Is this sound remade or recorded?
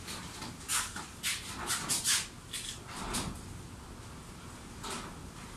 recorded